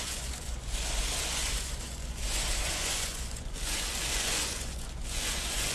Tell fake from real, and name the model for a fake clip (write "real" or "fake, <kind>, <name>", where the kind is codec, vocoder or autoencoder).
fake, vocoder, Vocos